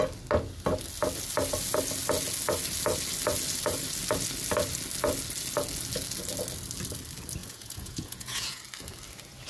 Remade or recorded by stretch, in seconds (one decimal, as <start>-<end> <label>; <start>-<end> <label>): 0.0-7.4 recorded; 7.4-8.6 remade; 8.6-9.5 recorded